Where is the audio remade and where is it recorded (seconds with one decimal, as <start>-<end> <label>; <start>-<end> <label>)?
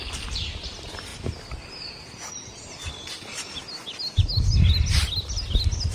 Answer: 0.0-5.9 recorded